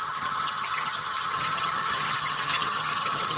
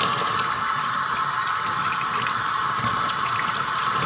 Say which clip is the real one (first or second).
second